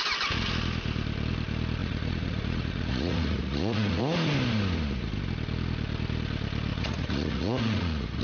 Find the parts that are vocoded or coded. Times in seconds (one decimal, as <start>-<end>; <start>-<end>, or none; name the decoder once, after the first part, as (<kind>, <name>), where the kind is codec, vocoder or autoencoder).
1.8-4.0 (vocoder, Vocos); 6.7-8.2